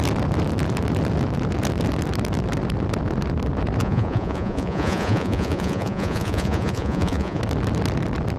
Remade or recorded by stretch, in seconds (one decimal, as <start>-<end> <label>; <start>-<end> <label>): 0.0-3.8 recorded; 3.8-7.4 remade; 7.4-8.4 recorded

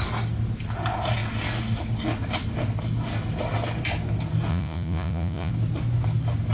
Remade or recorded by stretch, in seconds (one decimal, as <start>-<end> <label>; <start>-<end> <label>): 0.0-4.5 recorded; 4.5-5.5 remade; 5.5-6.5 recorded

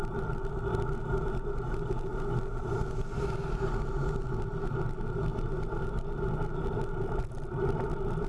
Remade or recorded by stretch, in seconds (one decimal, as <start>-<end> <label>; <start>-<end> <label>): 0.0-8.3 recorded